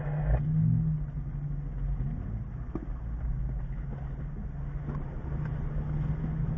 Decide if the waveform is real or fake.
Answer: real